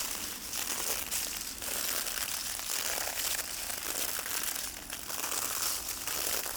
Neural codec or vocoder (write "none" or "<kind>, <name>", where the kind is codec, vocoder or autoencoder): none